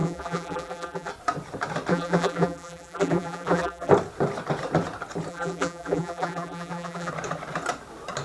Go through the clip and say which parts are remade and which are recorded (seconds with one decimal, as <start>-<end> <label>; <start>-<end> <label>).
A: 0.0-1.1 remade; 1.1-1.9 recorded; 1.9-3.9 remade; 3.9-5.3 recorded; 5.3-7.1 remade; 7.1-8.2 recorded

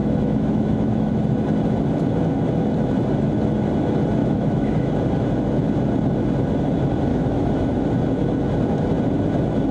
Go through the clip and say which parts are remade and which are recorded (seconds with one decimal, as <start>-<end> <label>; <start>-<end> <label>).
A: 0.0-1.1 remade; 1.1-4.2 recorded; 4.2-4.9 remade; 4.9-7.1 recorded; 7.1-7.8 remade; 7.8-9.7 recorded

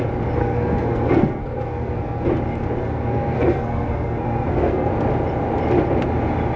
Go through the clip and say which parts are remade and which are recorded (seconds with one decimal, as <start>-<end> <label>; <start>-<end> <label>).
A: 0.0-0.4 recorded; 0.4-2.3 remade; 2.3-2.8 recorded; 2.8-4.9 remade; 4.9-6.6 recorded